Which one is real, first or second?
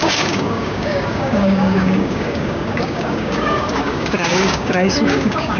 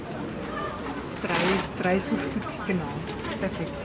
second